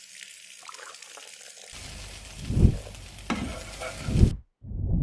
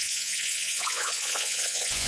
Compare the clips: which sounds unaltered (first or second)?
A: first